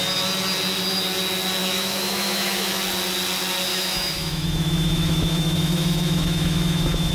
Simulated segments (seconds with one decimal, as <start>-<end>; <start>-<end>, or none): 1.6-2.8; 3.7-7.1